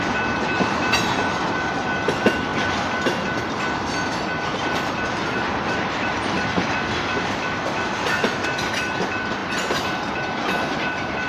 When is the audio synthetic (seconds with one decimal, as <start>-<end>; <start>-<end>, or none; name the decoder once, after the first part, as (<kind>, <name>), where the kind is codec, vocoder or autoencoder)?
0.0-11.3 (vocoder, BigVGAN v2)